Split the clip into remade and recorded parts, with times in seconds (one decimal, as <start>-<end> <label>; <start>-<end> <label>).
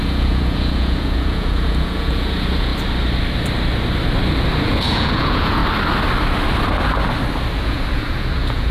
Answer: 0.0-2.7 remade; 2.7-4.6 recorded; 4.6-5.6 remade; 5.6-7.6 recorded; 7.6-8.7 remade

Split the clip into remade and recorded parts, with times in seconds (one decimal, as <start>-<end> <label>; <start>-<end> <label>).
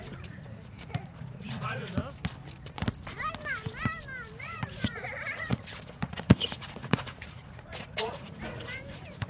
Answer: 0.0-2.0 remade; 2.0-4.4 recorded; 4.4-9.3 remade